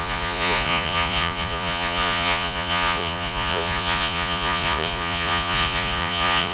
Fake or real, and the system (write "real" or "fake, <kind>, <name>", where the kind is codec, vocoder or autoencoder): fake, vocoder, Vocos